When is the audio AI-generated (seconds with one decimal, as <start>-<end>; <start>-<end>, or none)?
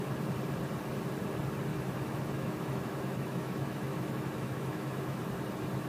1.7-5.2